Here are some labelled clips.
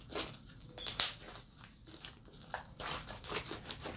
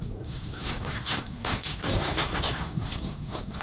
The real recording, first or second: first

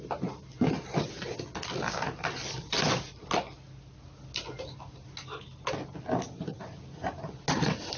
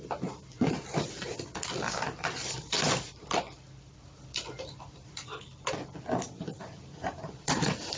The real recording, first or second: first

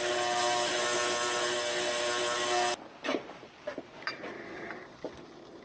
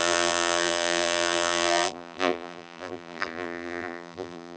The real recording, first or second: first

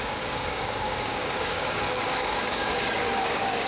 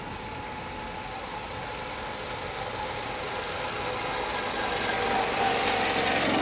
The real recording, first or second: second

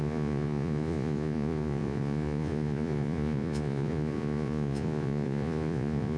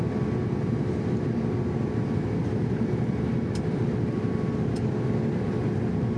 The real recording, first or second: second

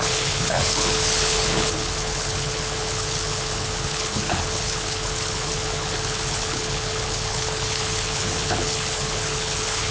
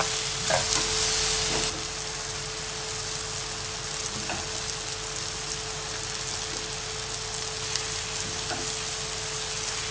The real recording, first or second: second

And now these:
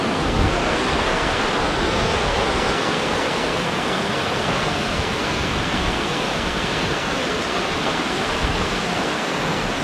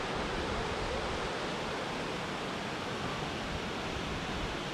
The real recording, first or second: second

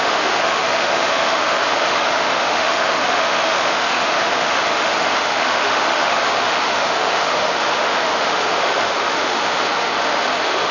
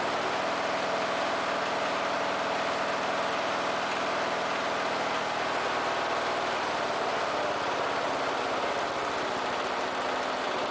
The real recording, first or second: second